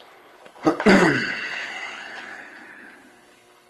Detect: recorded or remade remade